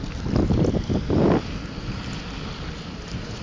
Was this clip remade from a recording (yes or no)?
no